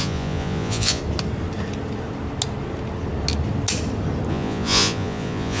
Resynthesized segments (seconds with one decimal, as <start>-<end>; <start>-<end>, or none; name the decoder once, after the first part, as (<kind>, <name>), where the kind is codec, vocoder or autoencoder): 0.0-1.0 (vocoder, Vocos); 4.3-5.6